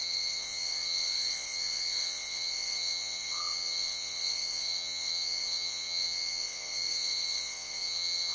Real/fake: fake